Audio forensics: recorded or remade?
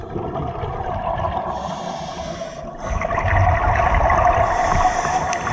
recorded